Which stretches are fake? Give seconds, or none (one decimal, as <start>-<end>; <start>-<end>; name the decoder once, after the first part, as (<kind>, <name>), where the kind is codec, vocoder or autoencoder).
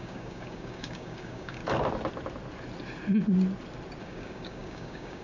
0.0-1.6 (codec, DAC); 4.0-5.2